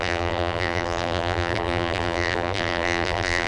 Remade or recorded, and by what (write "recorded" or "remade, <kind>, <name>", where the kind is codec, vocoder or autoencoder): remade, vocoder, BigVGAN v2